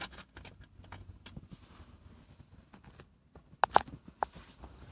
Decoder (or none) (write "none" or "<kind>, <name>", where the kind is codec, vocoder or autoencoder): none